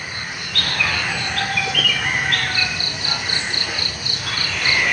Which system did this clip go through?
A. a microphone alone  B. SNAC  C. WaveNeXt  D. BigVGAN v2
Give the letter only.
A